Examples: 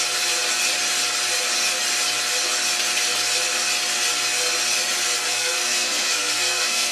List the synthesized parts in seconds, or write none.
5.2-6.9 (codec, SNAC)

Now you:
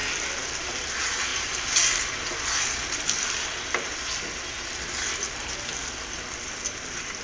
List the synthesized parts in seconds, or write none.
none

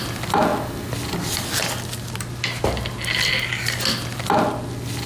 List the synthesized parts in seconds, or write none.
none

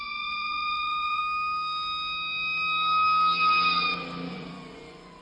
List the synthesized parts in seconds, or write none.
0.0-1.2 (vocoder, Vocos); 4.3-5.2

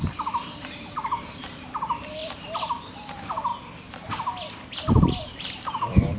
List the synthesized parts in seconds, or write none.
0.0-2.2 (vocoder, BigVGAN v2); 3.0-3.5; 4.8-6.2

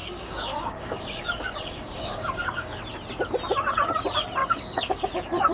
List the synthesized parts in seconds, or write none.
0.0-2.8 (codec, DAC); 4.4-5.1

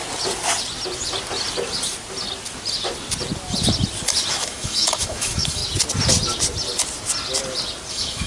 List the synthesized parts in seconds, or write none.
4.3-5.6 (autoencoder, DAC-VAE); 7.9-8.3